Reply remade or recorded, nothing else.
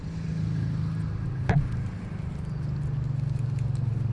recorded